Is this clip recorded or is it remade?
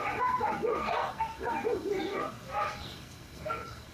remade